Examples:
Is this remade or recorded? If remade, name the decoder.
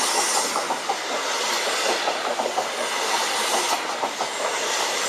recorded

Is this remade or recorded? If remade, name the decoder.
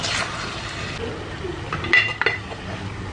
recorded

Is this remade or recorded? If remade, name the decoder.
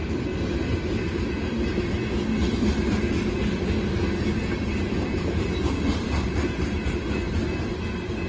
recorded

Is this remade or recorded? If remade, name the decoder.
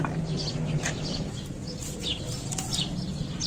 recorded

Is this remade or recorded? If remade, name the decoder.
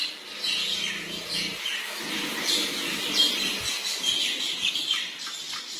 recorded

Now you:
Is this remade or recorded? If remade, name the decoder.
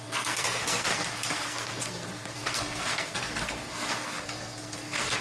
remade, codec, SNAC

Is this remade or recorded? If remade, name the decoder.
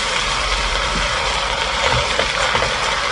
remade, vocoder, BigVGAN v2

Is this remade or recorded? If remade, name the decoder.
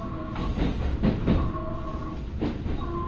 recorded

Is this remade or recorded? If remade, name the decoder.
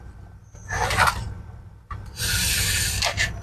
remade, vocoder, BigVGAN v2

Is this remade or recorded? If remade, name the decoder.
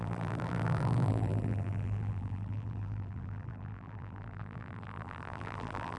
remade, vocoder, BigVGAN v2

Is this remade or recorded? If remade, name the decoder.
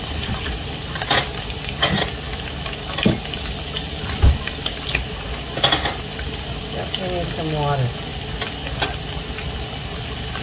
recorded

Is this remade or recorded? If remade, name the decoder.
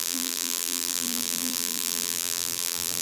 remade, vocoder, BigVGAN v2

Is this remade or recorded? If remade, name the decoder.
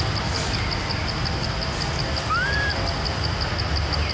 recorded